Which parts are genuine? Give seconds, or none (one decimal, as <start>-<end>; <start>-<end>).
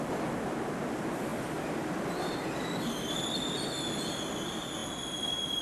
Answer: 0.0-1.3; 2.8-5.6